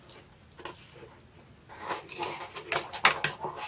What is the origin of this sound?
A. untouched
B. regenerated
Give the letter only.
A